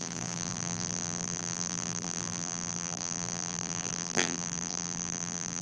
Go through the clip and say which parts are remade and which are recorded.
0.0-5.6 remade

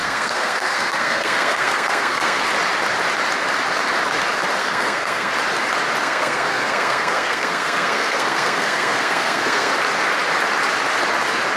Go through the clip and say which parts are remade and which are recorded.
0.0-2.4 remade; 2.4-4.6 recorded; 4.6-5.3 remade; 5.3-6.0 recorded; 6.0-9.7 remade; 9.7-11.6 recorded

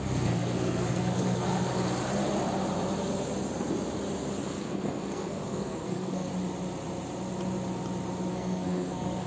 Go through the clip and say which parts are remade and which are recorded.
0.0-1.7 remade; 1.7-4.3 recorded; 4.3-6.3 remade; 6.3-8.3 recorded; 8.3-9.3 remade

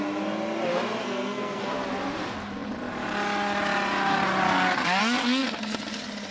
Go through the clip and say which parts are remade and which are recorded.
0.0-1.0 recorded; 1.0-1.7 remade; 1.7-6.3 recorded